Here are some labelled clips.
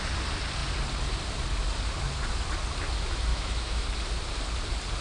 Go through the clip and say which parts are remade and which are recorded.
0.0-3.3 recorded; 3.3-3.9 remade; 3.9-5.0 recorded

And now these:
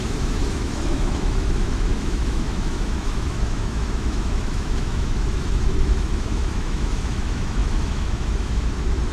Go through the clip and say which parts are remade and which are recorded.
0.0-9.1 remade

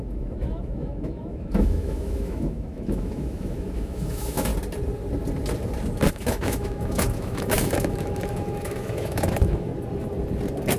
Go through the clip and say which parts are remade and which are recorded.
0.0-4.5 remade; 4.5-6.1 recorded; 6.1-9.7 remade; 9.7-10.8 recorded

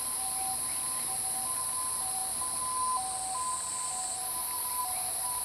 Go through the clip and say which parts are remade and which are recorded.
0.0-5.4 recorded

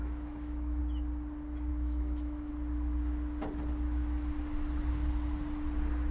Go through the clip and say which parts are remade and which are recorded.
0.0-0.8 remade; 0.8-1.7 recorded; 1.7-2.5 remade; 2.5-6.1 recorded

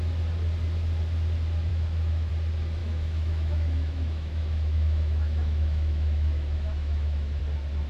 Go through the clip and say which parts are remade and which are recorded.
0.0-1.7 recorded; 1.7-2.3 remade; 2.3-2.8 recorded; 2.8-7.4 remade; 7.4-7.9 recorded

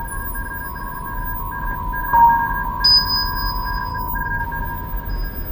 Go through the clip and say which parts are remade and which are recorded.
0.0-3.9 recorded; 3.9-4.4 remade; 4.4-5.5 recorded